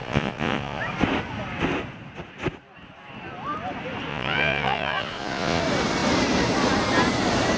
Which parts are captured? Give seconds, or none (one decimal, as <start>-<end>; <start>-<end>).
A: 0.8-4.1; 5.6-7.6